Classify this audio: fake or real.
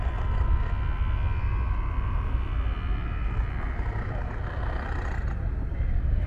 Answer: real